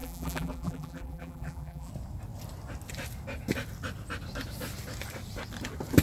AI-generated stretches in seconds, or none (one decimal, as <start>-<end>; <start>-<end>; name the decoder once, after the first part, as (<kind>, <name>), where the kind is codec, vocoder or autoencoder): 0.0-1.9 (vocoder, BigVGAN v2)